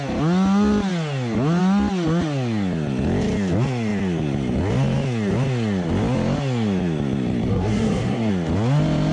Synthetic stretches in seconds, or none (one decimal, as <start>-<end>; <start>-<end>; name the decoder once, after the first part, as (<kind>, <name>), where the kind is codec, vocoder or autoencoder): 7.5-8.3 (codec, SNAC)